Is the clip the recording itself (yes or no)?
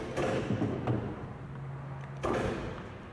yes